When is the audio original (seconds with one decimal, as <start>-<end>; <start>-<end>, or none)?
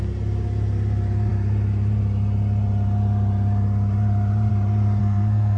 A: 0.0-5.0